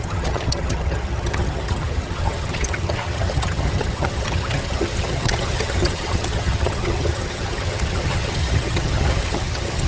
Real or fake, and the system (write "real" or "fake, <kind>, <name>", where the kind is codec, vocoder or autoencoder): fake, vocoder, HiFi-GAN